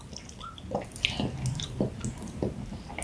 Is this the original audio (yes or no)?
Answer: yes